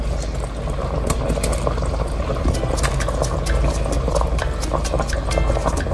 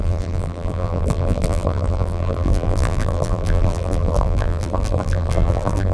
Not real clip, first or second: second